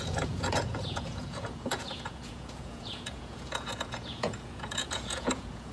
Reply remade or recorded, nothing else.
remade